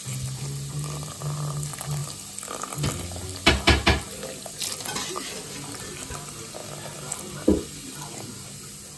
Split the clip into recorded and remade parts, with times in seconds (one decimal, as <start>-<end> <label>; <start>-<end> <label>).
0.0-9.0 recorded